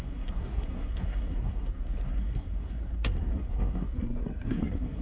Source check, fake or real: fake